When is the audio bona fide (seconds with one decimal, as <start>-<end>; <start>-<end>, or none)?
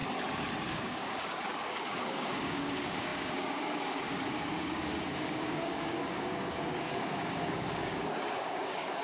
0.0-0.7